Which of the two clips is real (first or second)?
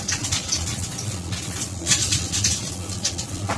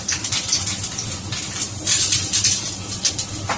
second